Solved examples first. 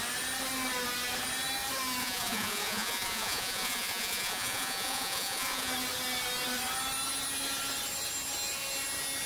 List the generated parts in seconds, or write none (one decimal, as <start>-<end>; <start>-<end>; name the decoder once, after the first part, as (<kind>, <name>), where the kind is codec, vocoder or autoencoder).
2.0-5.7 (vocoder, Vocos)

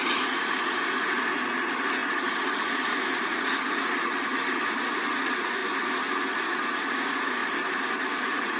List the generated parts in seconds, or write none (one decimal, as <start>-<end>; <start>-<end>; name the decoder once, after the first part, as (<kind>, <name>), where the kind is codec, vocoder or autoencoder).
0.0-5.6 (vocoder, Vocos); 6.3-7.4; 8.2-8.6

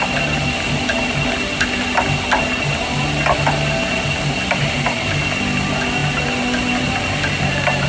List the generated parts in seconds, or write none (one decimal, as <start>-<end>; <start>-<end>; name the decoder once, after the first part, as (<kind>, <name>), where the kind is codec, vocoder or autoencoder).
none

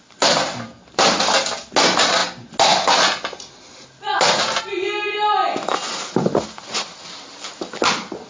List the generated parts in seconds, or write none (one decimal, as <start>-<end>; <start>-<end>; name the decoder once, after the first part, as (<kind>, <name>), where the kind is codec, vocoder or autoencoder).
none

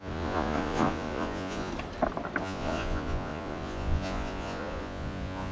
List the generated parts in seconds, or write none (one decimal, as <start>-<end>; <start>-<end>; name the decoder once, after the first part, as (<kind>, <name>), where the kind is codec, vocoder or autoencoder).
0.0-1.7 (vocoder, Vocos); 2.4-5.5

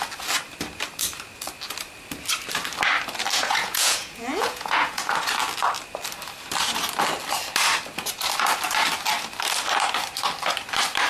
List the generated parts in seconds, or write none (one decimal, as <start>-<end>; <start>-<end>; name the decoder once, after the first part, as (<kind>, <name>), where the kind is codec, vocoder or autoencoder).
3.3-5.0 (vocoder, Vocos)